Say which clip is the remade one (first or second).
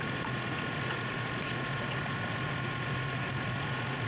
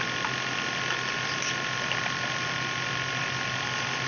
first